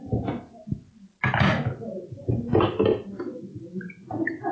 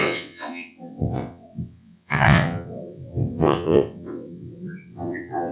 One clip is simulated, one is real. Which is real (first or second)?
first